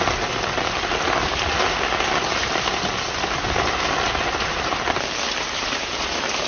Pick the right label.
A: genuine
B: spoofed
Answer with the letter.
A